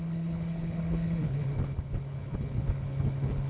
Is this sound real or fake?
fake